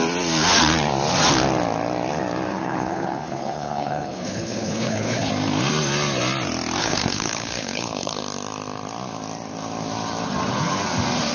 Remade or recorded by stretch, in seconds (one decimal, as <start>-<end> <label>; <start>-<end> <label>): 0.0-2.5 recorded; 2.5-5.3 remade; 5.3-6.8 recorded; 6.8-8.2 remade; 8.2-11.3 recorded